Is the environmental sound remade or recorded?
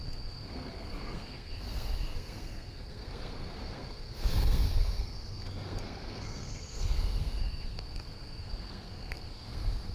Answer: remade